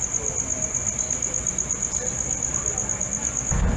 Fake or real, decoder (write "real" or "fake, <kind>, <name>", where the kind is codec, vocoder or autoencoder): real